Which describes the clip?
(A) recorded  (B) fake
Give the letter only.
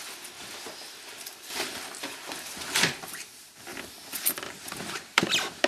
B